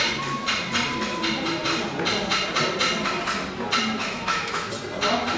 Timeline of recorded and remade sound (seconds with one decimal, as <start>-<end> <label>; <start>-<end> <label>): 0.0-4.0 recorded; 4.0-4.7 remade; 4.7-5.4 recorded